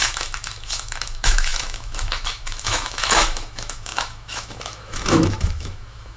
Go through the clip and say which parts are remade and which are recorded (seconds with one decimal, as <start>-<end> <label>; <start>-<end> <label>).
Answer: 0.0-6.2 remade